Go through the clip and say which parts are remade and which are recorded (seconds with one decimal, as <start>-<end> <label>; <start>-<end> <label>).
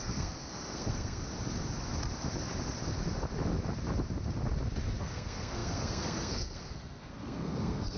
0.0-1.2 remade; 1.2-5.0 recorded; 5.0-8.0 remade